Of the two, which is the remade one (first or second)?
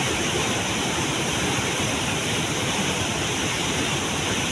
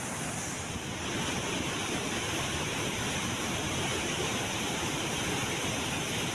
first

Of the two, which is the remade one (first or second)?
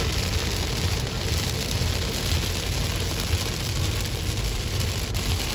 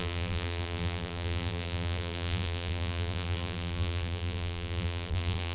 second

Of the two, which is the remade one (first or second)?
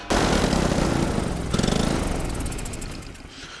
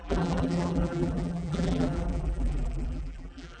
second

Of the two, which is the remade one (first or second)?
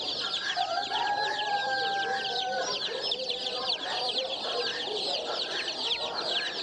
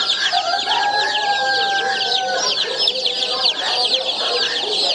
first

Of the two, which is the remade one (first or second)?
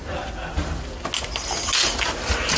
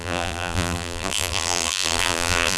second